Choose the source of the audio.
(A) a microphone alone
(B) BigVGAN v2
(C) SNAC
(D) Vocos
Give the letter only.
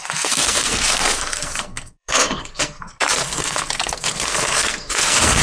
C